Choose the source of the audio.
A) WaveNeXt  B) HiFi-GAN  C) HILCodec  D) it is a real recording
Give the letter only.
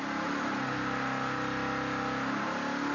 D